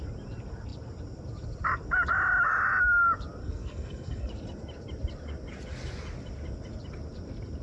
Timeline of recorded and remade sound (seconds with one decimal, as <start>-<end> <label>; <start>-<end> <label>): 0.0-3.4 recorded; 3.4-4.3 remade; 4.3-7.6 recorded